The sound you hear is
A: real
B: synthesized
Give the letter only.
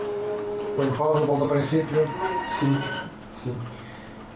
B